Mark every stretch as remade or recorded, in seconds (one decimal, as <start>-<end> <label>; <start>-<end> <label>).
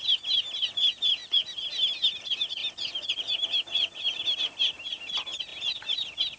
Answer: 0.0-6.4 recorded